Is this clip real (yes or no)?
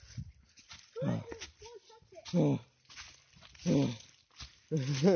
yes